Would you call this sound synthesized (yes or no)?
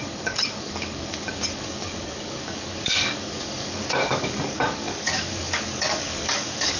yes